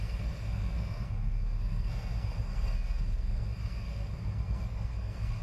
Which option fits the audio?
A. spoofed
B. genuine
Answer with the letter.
A